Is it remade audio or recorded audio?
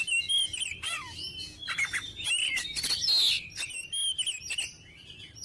recorded